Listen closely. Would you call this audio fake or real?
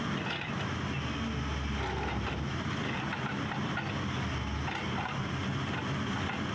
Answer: real